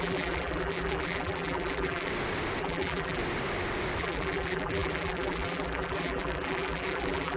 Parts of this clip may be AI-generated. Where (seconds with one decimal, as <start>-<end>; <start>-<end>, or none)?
0.0-2.1; 2.6-3.2; 4.0-7.4